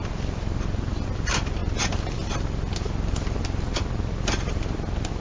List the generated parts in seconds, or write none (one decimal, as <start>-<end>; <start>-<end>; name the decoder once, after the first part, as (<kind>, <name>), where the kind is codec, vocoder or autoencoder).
none